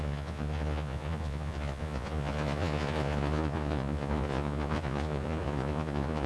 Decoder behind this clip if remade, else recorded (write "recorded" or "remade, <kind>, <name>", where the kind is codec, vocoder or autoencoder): remade, vocoder, Vocos